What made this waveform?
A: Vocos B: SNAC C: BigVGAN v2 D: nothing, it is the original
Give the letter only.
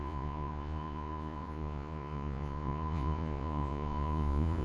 A